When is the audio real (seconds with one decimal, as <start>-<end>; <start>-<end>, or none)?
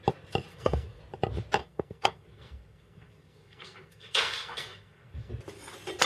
0.0-0.5; 1.0-1.6; 5.3-6.1